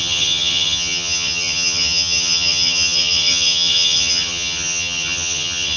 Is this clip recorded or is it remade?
remade